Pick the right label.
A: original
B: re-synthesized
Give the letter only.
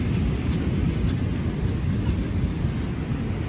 A